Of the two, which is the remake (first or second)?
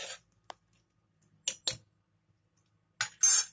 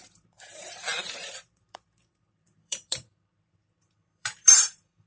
second